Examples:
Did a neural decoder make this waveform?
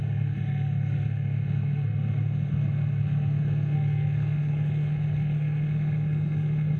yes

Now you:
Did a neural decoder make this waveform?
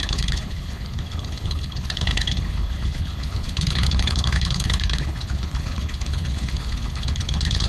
yes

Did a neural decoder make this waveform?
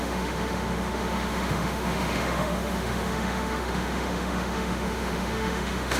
yes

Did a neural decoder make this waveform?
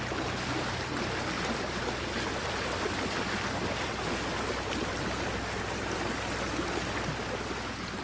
no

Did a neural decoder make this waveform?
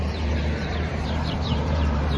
yes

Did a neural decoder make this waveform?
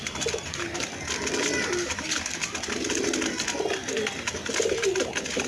no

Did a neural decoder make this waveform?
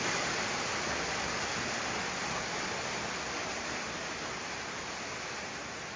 no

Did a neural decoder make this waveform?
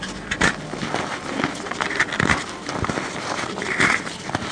no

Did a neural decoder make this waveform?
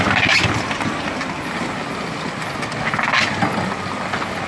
no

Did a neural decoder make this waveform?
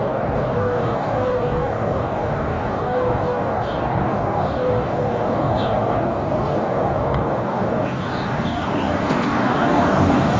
yes